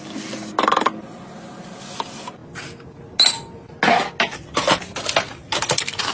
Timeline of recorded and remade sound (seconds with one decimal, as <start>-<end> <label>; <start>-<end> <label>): 0.0-6.1 recorded